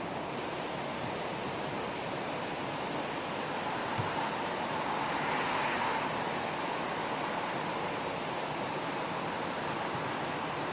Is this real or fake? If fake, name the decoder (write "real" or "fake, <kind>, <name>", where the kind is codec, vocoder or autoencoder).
real